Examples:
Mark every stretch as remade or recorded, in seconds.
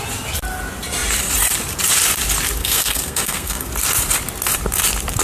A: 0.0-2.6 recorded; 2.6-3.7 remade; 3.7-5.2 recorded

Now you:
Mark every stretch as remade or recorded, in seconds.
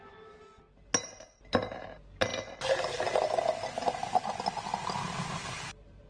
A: 0.0-6.1 recorded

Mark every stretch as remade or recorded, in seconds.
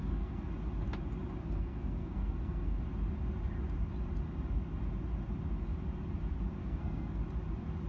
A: 0.0-0.5 remade; 0.5-1.4 recorded; 1.4-2.8 remade; 2.8-6.6 recorded; 6.6-7.2 remade; 7.2-7.9 recorded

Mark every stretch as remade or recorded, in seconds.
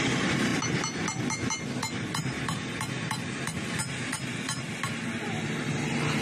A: 0.0-6.2 recorded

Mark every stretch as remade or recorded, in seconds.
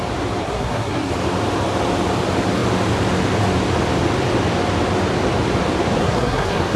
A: 0.0-0.4 recorded; 0.4-1.1 remade; 1.1-6.0 recorded; 6.0-6.8 remade